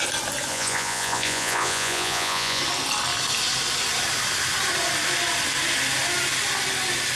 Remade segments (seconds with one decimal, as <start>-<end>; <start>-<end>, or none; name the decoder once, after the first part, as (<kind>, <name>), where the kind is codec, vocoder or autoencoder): 0.5-2.6 (vocoder, Vocos)